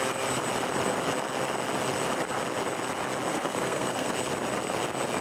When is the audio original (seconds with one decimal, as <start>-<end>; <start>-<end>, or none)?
0.0-3.3; 4.1-5.2